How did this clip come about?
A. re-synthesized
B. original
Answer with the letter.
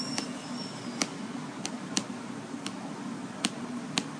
B